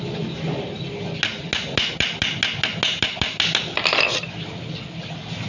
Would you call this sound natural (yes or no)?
yes